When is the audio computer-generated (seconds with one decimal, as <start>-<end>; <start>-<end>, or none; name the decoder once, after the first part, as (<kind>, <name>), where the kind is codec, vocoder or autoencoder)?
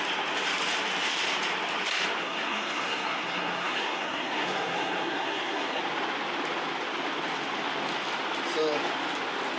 2.2-5.8 (codec, SNAC)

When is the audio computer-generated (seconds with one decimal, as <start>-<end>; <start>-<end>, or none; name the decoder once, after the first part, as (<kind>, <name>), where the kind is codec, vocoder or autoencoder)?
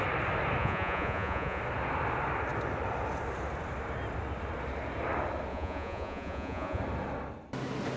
0.6-1.6 (vocoder, Vocos); 5.5-6.8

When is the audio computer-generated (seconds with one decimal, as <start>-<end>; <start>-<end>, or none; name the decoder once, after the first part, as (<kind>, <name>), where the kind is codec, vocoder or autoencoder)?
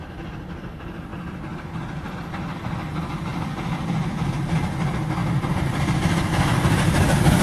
1.1-2.1 (vocoder, BigVGAN v2); 3.3-3.9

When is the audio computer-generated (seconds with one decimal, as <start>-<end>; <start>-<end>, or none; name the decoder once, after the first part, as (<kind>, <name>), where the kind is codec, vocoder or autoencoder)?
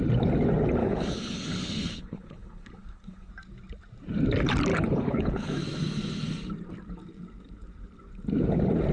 0.8-3.3 (codec, HILCodec); 4.7-5.5